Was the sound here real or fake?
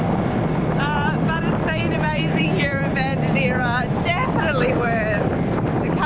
fake